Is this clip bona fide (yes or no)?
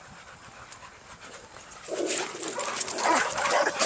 yes